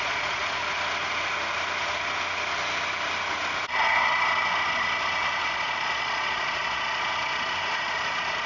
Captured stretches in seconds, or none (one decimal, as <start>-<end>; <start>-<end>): 0.6-5.4; 7.1-7.7